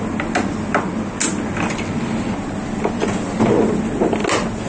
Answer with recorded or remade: recorded